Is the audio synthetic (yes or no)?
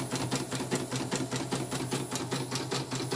no